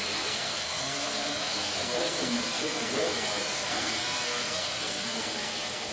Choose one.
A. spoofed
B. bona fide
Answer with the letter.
A